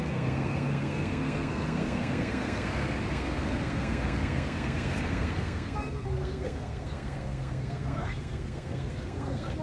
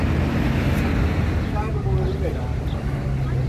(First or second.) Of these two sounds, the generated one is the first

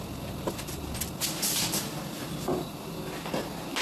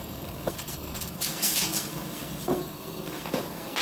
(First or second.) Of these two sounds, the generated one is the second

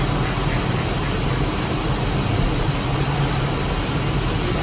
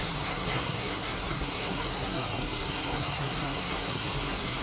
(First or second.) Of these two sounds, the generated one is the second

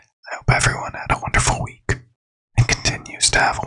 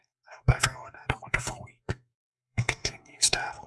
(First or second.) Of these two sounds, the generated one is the second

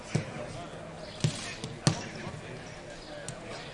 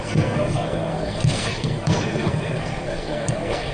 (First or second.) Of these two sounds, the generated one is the second